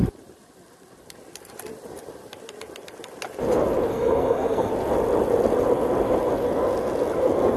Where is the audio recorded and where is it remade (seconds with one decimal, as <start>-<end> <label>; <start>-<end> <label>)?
0.0-3.9 recorded; 3.9-4.7 remade; 4.7-7.6 recorded